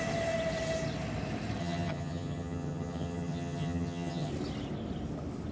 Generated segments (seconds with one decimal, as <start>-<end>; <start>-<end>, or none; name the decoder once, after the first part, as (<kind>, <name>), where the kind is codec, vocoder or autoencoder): 1.6-4.3 (vocoder, HiFi-GAN)